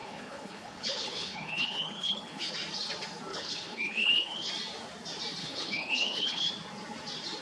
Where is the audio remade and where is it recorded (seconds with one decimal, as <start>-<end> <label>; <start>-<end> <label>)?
0.0-2.5 remade; 2.5-3.3 recorded; 3.3-4.5 remade; 4.5-5.4 recorded; 5.4-6.5 remade; 6.5-7.4 recorded